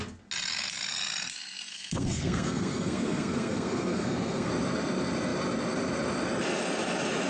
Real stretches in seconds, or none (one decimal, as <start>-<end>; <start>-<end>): 0.0-1.7; 4.5-7.3